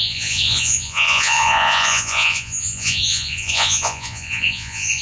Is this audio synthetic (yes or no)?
yes